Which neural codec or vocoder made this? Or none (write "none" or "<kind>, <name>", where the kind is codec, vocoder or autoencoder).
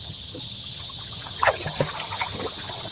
vocoder, HiFi-GAN